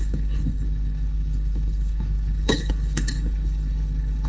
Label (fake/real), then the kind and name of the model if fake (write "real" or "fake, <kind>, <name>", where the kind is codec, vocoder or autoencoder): fake, codec, HILCodec